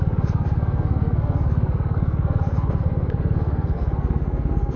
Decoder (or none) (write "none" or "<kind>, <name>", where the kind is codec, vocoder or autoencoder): codec, SNAC